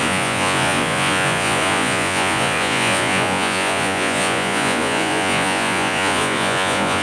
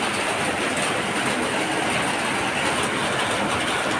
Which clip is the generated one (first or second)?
first